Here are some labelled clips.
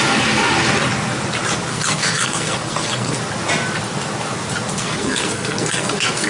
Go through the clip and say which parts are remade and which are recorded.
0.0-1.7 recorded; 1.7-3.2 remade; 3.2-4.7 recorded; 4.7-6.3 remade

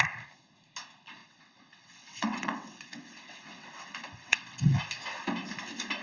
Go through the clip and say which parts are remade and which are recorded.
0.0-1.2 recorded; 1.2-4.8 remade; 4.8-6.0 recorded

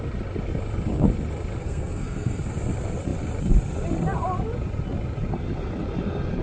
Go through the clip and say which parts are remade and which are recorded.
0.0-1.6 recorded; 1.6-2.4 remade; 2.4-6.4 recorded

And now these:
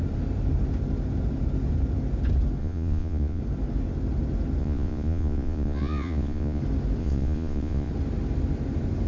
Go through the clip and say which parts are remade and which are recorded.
0.0-2.6 recorded; 2.6-3.4 remade; 3.4-4.6 recorded; 4.6-6.6 remade; 6.6-7.0 recorded; 7.0-7.9 remade; 7.9-9.1 recorded